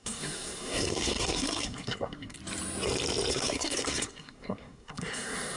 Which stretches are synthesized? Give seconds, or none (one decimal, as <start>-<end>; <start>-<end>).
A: 0.0-2.4; 3.3-5.6